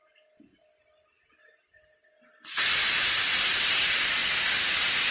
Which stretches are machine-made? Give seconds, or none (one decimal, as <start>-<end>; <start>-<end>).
none